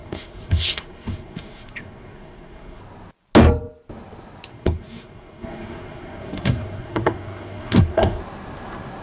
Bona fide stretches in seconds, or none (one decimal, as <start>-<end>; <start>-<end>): 2.8-4.5; 8.2-9.0